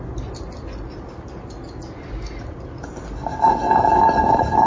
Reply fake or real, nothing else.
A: real